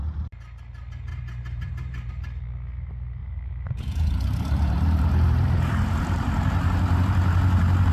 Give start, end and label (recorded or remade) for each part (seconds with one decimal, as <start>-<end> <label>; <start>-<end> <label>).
0.0-1.1 recorded; 1.1-2.1 remade; 2.1-3.2 recorded; 3.2-7.9 remade